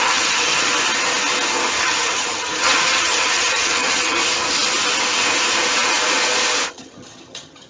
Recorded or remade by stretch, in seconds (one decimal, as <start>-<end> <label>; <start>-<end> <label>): 0.0-0.7 remade; 0.7-1.8 recorded; 1.8-4.2 remade; 4.2-6.7 recorded; 6.7-7.7 remade